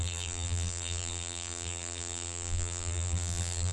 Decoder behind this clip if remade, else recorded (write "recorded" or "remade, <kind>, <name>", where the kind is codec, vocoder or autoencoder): remade, vocoder, BigVGAN v2